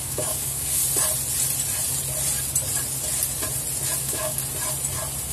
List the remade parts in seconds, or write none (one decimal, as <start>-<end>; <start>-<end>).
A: 0.0-0.8; 4.0-4.4